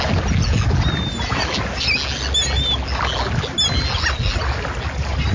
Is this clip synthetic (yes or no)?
no